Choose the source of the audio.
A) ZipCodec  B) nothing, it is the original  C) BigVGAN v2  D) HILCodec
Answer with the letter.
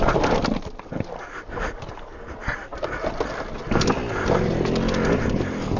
B